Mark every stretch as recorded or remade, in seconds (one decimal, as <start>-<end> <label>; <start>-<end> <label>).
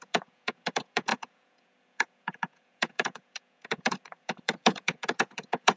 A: 0.0-5.8 remade